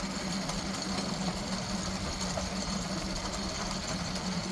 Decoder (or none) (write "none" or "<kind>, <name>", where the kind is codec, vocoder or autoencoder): none